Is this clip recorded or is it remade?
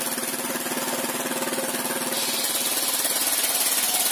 recorded